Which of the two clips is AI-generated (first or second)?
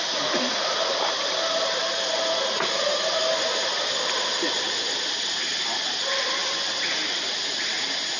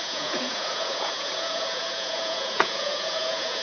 second